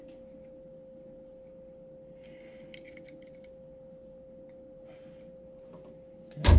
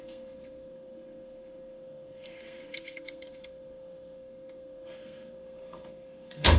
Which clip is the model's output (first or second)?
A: second